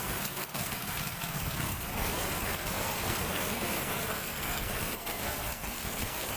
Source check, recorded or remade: remade